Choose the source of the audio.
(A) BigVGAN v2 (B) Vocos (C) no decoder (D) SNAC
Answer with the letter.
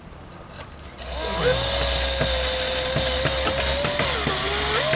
C